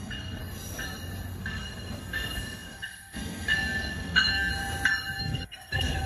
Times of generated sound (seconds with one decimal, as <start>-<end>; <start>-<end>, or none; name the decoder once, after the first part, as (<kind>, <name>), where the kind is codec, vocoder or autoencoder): 0.0-0.4 (codec, SNAC); 1.4-4.5; 5.2-6.1